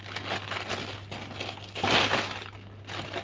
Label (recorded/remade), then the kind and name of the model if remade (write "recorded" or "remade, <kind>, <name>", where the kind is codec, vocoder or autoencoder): recorded